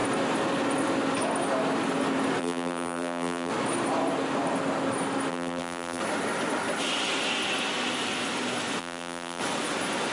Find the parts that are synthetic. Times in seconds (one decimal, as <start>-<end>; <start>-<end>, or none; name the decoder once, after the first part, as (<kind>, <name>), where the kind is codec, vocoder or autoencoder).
2.4-3.5 (vocoder, BigVGAN v2); 5.3-6.0; 8.8-9.4